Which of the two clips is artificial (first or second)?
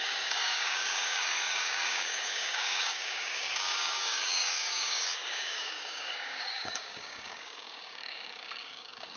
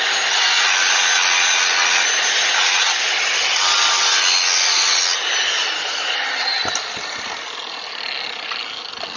first